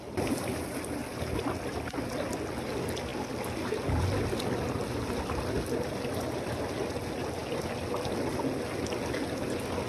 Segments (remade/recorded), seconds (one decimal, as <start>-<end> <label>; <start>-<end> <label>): 0.0-9.9 recorded